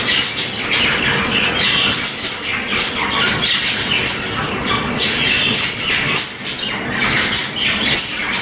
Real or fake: real